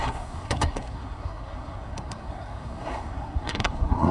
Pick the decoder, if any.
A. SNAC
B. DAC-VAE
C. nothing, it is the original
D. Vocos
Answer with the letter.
A